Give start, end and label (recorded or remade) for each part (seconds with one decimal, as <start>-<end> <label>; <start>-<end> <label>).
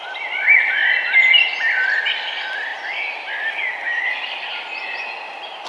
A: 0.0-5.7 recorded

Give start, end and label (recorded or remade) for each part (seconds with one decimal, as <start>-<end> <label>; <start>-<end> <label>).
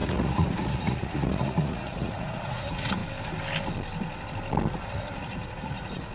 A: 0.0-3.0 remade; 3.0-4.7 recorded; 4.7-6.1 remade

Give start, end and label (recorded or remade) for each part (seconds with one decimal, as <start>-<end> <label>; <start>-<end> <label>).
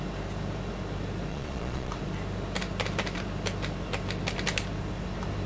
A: 0.0-1.3 recorded; 1.3-1.9 remade; 1.9-5.5 recorded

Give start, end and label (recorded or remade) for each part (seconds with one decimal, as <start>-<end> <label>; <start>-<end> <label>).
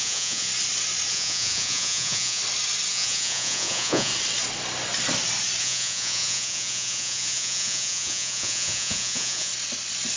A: 0.0-0.5 remade; 0.5-1.1 recorded; 1.1-2.4 remade; 2.4-2.9 recorded; 2.9-4.1 remade; 4.1-5.6 recorded; 5.6-9.5 remade; 9.5-10.2 recorded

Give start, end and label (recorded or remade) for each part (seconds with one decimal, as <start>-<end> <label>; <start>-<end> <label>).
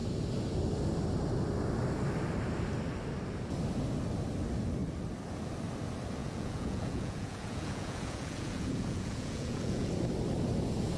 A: 0.0-6.2 recorded; 6.2-9.9 remade; 9.9-11.0 recorded